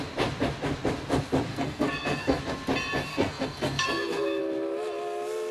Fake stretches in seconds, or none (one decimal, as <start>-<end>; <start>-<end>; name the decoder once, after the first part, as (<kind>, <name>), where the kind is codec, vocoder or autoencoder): 1.5-2.4 (codec, SNAC); 3.1-4.4

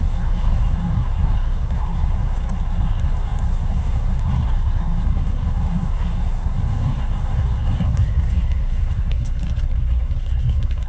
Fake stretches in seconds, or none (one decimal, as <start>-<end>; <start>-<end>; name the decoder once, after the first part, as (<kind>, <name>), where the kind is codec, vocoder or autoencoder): 0.0-10.9 (codec, SNAC)

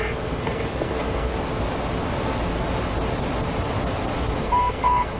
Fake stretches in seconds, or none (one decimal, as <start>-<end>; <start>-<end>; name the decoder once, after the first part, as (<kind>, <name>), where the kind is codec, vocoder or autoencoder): 0.0-1.3 (codec, SNAC); 4.4-5.2

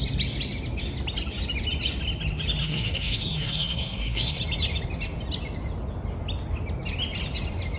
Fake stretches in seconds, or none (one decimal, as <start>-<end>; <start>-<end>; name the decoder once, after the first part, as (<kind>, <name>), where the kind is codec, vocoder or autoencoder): 2.6-4.4 (codec, SNAC)

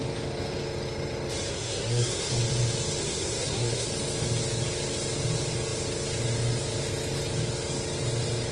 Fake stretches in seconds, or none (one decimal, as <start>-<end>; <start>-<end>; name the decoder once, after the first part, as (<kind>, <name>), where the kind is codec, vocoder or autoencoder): 1.5-2.3 (codec, SNAC); 3.0-3.9